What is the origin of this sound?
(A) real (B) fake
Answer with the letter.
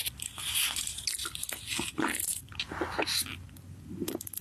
A